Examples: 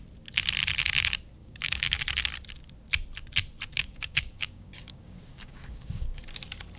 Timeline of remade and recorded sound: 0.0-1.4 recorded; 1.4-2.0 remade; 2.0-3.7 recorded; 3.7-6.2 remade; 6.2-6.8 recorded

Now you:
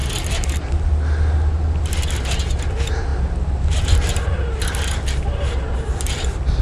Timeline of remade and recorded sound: 0.0-6.6 recorded

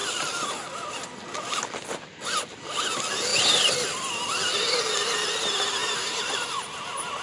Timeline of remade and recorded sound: 0.0-5.8 recorded; 5.8-7.2 remade

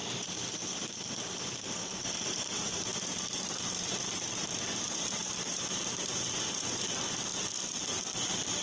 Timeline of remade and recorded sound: 0.0-0.6 remade; 0.6-1.8 recorded; 1.8-6.2 remade; 6.2-8.6 recorded

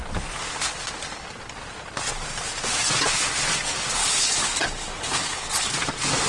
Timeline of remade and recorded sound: 0.0-4.0 recorded; 4.0-5.7 remade; 5.7-6.3 recorded

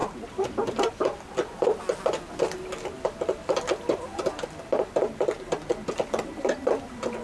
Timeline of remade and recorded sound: 0.0-7.2 recorded

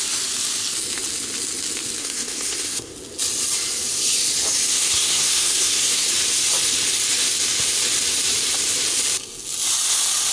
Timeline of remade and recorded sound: 0.0-2.0 recorded; 2.0-2.9 remade; 2.9-4.7 recorded; 4.7-6.1 remade; 6.1-10.3 recorded

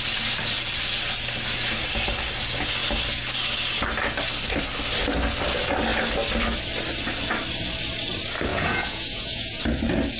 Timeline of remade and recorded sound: 0.0-8.5 recorded; 8.5-9.6 remade; 9.6-10.2 recorded